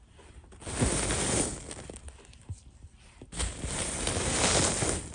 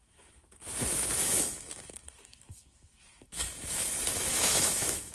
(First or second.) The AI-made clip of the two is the second